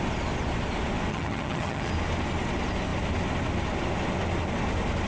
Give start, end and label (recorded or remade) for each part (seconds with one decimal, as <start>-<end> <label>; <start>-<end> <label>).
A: 0.0-1.1 recorded; 1.1-1.9 remade; 1.9-5.1 recorded